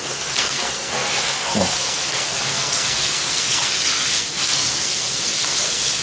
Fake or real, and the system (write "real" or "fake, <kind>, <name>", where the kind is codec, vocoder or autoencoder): fake, codec, SNAC